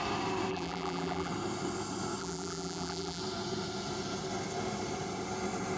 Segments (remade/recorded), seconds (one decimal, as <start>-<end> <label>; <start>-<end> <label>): 0.0-0.5 recorded; 0.5-1.3 remade; 1.3-2.2 recorded; 2.2-3.2 remade; 3.2-5.8 recorded